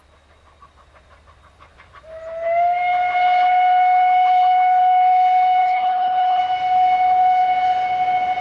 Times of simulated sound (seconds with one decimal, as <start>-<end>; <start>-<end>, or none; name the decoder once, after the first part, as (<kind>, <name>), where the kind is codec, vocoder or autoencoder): 5.6-6.4 (codec, HILCodec)